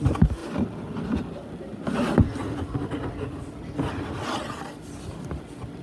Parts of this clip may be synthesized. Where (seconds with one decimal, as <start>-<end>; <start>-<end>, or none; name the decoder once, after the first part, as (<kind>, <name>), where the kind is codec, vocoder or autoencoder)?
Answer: none